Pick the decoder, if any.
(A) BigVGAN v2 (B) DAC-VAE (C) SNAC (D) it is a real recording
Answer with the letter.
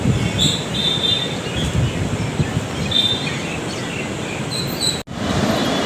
D